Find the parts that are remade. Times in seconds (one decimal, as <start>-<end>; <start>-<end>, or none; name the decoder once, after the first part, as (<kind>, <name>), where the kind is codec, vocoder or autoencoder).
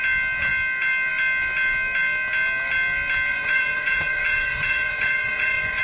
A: 3.3-5.8 (vocoder, Vocos)